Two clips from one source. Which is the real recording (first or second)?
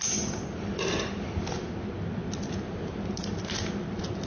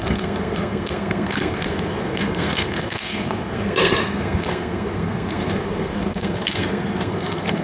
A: first